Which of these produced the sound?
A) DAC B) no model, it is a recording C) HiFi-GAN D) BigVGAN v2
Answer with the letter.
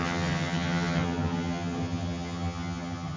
C